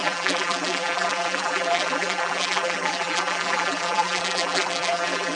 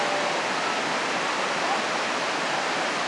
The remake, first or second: first